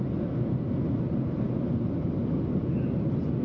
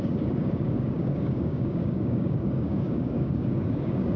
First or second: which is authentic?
first